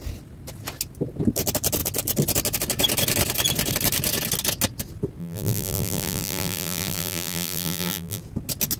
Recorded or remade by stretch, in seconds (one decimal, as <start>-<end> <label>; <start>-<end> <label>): 0.0-5.2 recorded; 5.2-8.2 remade; 8.2-8.8 recorded